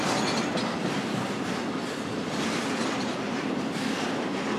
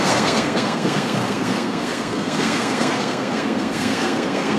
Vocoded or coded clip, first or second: second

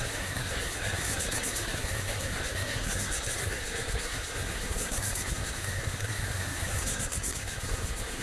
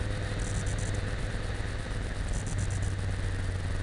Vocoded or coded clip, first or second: first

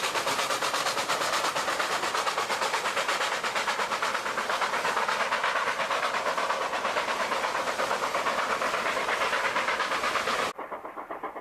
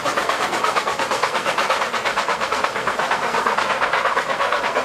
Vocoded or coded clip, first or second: second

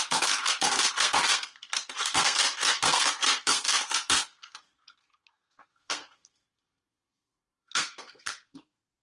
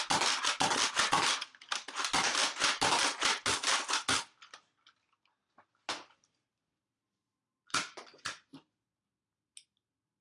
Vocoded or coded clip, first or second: first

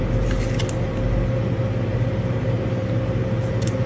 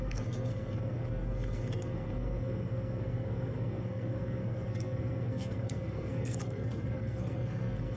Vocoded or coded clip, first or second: second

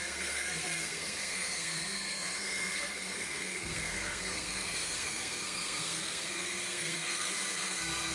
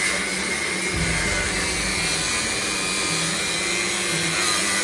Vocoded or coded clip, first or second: first